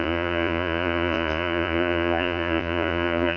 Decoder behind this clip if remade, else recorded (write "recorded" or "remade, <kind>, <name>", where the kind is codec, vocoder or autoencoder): remade, vocoder, Vocos